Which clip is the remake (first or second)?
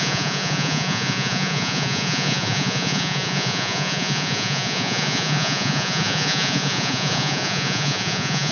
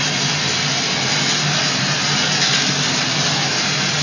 first